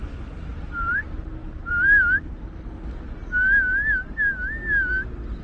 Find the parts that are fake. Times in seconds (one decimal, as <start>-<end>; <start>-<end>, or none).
0.5-1.7